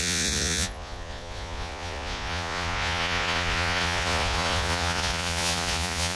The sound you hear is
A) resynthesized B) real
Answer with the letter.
A